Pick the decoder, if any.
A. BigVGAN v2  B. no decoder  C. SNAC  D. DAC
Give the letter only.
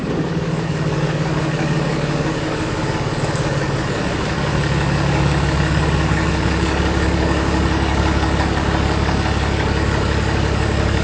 D